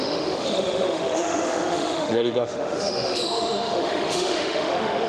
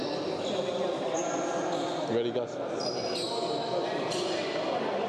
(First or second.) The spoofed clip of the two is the first